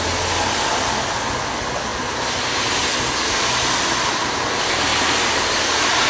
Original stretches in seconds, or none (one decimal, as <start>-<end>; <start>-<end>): 0.0-6.1